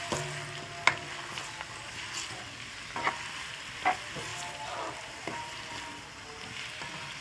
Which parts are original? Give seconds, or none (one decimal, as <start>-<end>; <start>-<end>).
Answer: 0.0-7.2